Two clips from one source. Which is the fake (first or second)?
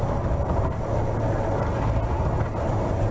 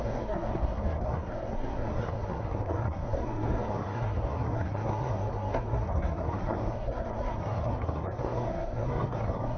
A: second